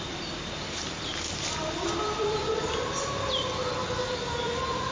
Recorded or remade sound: recorded